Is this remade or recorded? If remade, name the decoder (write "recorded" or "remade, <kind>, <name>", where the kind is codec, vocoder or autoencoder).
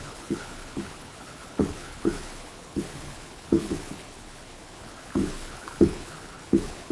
remade, codec, HILCodec